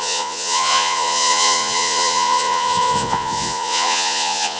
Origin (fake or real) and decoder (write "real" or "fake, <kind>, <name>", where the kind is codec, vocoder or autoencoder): fake, vocoder, Vocos